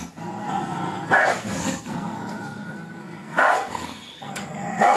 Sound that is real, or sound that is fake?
fake